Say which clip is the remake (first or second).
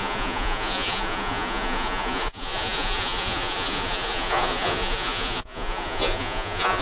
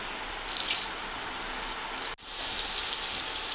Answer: first